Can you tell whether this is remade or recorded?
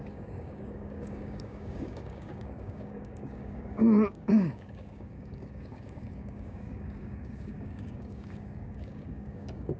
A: remade